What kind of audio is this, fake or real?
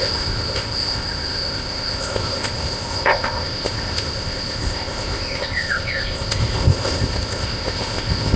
fake